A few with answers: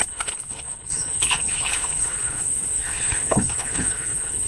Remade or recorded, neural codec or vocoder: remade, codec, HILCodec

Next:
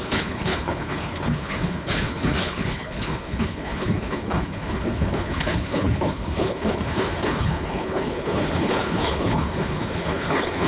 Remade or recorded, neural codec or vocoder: remade, codec, HILCodec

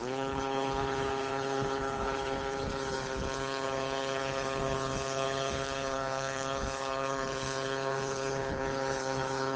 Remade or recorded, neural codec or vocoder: remade, codec, HILCodec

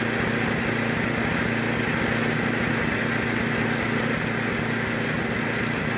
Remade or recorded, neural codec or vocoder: recorded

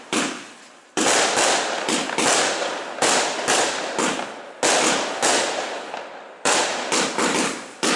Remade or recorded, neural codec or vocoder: recorded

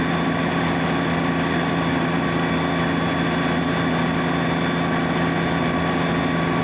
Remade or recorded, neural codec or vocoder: recorded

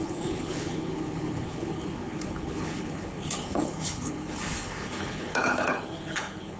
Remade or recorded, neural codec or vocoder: remade, codec, HILCodec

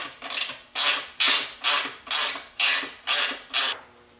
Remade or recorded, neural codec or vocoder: recorded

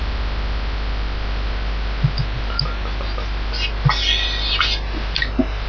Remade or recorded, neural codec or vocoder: recorded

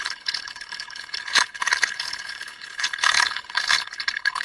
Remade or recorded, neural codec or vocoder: remade, codec, HILCodec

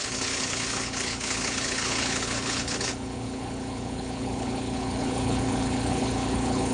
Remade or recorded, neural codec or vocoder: remade, codec, HILCodec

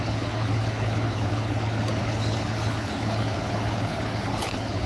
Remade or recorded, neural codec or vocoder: remade, codec, HILCodec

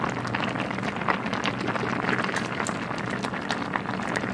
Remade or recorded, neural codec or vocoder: recorded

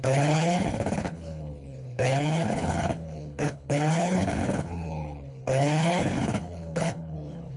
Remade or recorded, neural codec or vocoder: remade, codec, HILCodec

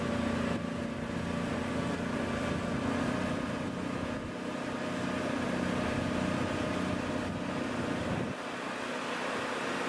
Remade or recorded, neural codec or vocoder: recorded